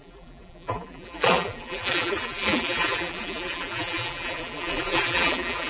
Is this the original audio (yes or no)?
no